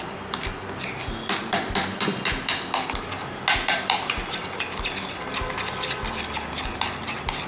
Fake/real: real